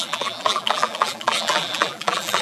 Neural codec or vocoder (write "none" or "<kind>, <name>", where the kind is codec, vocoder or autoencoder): vocoder, BigVGAN v2